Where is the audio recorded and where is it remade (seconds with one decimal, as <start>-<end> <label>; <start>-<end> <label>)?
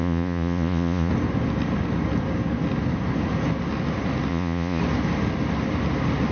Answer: 0.0-1.1 remade; 1.1-4.3 recorded; 4.3-4.8 remade; 4.8-6.3 recorded